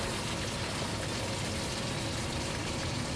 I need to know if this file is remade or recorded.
recorded